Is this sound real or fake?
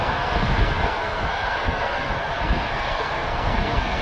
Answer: fake